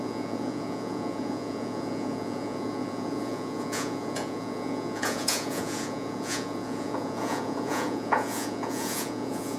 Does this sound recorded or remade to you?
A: remade